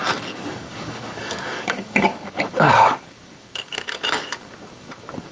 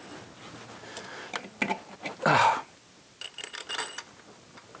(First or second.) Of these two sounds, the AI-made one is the first